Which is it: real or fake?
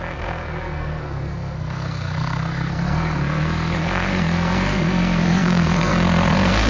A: fake